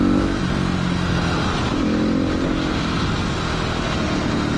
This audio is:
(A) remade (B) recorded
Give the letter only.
B